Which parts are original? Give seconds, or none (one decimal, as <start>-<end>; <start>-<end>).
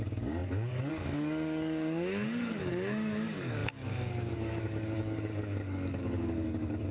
none